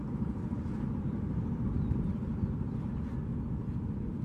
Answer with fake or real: real